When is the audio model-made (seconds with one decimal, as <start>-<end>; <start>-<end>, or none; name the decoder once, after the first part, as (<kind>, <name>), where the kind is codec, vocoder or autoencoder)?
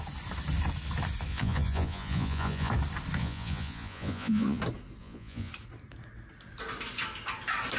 1.3-2.7 (vocoder, Vocos); 3.2-4.6; 5.0-5.5